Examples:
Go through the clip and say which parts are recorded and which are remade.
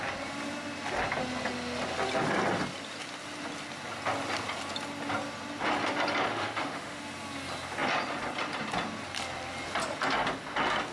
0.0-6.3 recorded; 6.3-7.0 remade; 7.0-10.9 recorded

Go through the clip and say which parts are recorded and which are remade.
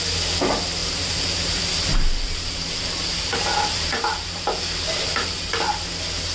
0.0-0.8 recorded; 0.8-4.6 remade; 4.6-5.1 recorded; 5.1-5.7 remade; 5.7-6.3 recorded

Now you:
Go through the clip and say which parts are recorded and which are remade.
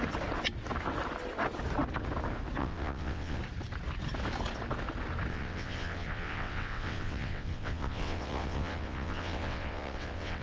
0.0-2.6 recorded; 2.6-3.4 remade; 3.4-5.3 recorded; 5.3-10.4 remade